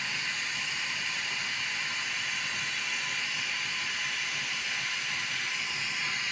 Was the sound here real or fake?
real